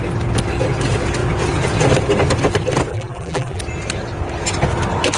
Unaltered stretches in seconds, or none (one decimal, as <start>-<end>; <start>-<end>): 0.0-2.9; 3.6-5.2